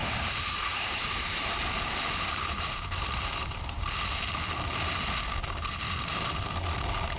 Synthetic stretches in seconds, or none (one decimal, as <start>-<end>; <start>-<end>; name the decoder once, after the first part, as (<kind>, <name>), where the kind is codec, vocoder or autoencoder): 0.0-4.3 (vocoder, BigVGAN v2); 6.1-6.7